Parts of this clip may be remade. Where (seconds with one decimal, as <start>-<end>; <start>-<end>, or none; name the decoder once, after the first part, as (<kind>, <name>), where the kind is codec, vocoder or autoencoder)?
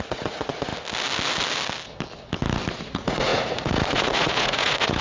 0.0-0.7 (vocoder, Vocos); 2.9-5.0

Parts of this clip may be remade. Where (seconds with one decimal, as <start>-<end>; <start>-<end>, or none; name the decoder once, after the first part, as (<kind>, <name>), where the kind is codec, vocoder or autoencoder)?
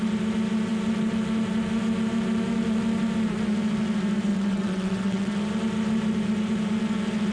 4.3-5.3 (vocoder, WaveNeXt)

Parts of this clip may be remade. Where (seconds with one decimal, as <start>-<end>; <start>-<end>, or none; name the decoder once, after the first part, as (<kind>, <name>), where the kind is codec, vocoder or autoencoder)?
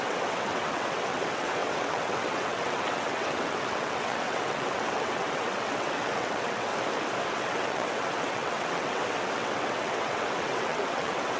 0.0-6.7 (vocoder, WaveNeXt); 7.3-11.4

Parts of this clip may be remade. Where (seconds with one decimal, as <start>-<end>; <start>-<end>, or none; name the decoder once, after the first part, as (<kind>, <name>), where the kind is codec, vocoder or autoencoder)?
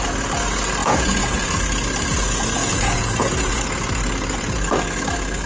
0.8-1.6 (vocoder, Vocos); 2.6-3.6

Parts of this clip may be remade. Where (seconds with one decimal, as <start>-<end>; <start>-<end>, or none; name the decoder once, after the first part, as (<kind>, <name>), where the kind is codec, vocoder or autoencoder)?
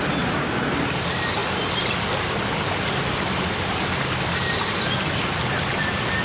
none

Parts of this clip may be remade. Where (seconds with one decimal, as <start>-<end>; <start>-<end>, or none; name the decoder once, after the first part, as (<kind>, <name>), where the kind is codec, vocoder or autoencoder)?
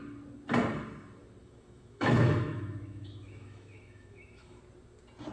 1.4-4.6 (autoencoder, DAC-VAE)